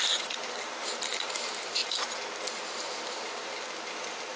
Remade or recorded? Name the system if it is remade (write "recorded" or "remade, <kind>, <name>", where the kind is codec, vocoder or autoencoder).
recorded